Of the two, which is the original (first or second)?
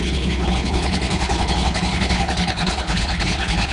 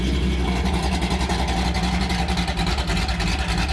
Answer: second